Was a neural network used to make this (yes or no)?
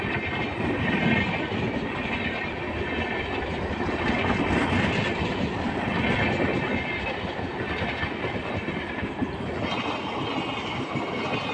no